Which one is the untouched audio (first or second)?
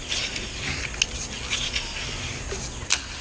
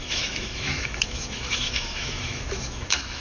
first